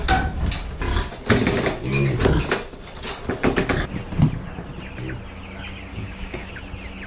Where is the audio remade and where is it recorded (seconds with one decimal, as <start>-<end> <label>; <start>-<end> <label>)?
0.0-5.9 recorded; 5.9-6.5 remade; 6.5-7.1 recorded